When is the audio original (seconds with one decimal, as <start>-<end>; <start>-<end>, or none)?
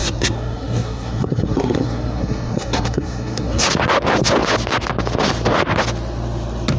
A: 3.7-6.8